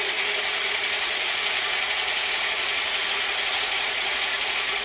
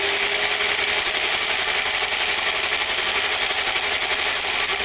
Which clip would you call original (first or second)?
second